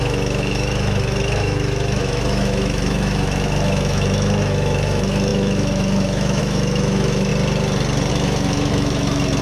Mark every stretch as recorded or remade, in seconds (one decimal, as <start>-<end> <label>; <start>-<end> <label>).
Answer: 0.0-7.3 remade; 7.3-8.1 recorded; 8.1-9.4 remade